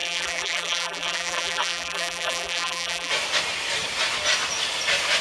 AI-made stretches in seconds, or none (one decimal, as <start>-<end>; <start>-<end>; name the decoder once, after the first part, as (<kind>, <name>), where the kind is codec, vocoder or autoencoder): 0.0-3.1 (vocoder, BigVGAN v2)